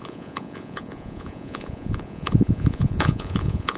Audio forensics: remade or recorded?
remade